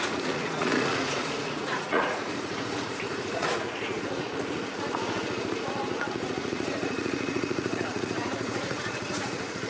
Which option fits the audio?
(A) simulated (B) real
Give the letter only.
A